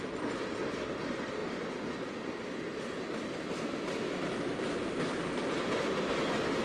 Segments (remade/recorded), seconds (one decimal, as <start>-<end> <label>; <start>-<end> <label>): 0.0-6.6 recorded